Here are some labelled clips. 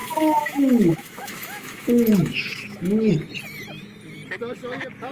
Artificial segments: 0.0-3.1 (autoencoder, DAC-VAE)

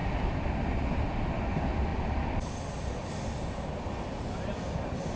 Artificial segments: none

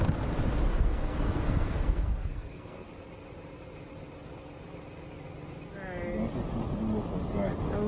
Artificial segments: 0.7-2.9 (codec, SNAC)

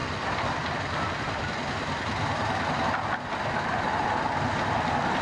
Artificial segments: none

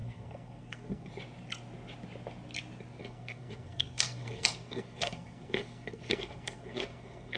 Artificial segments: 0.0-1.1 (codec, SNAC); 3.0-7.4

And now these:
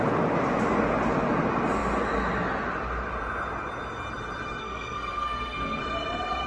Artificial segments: 4.6-5.8 (codec, SNAC)

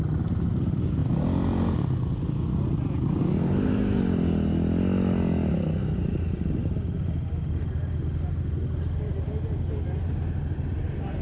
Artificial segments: 3.4-4.0 (codec, SNAC)